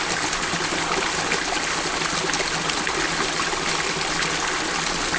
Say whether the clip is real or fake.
real